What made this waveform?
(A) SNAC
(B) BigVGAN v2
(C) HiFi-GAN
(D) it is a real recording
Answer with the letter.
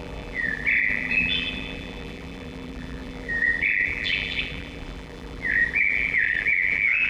B